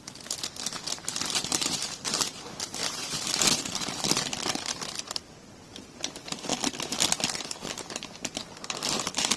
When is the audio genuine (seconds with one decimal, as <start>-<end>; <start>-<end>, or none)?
0.0-2.8; 3.7-9.4